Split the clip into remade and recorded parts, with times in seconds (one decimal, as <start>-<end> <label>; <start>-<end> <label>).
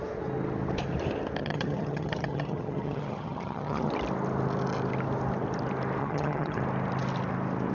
0.0-1.4 recorded; 1.4-3.9 remade; 3.9-6.0 recorded; 6.0-6.6 remade; 6.6-7.7 recorded